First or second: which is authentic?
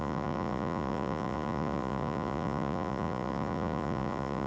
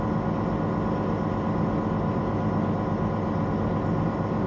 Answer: second